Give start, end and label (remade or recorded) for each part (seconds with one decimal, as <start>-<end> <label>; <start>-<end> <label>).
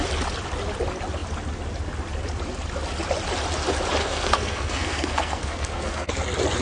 0.0-4.0 recorded; 4.0-6.1 remade; 6.1-6.6 recorded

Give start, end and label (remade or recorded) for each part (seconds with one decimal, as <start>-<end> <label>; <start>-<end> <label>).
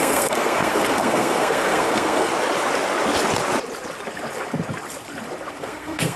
0.0-2.3 remade; 2.3-5.5 recorded; 5.5-6.2 remade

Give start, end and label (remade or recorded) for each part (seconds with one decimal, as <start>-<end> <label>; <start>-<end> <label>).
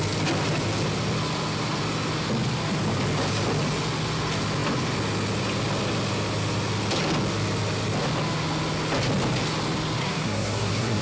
0.0-10.0 recorded; 10.0-11.0 remade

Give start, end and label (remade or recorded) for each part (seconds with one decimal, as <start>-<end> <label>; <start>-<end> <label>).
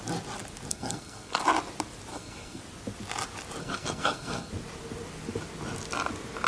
0.0-0.7 recorded; 0.7-1.4 remade; 1.4-2.1 recorded; 2.1-2.6 remade; 2.6-3.6 recorded; 3.6-4.5 remade; 4.5-6.5 recorded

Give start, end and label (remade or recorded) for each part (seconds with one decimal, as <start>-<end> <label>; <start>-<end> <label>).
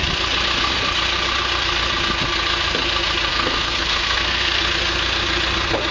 0.0-3.3 recorded; 3.3-4.6 remade; 4.6-5.9 recorded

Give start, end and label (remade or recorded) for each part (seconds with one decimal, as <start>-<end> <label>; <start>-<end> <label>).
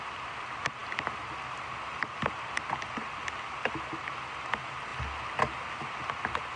0.0-6.6 recorded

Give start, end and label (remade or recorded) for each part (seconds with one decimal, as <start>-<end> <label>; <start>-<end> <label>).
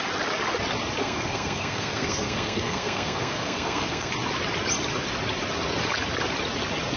0.0-1.0 recorded; 1.0-4.1 remade; 4.1-7.0 recorded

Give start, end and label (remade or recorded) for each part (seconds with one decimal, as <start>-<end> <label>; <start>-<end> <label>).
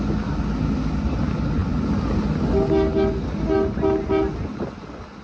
0.0-5.2 recorded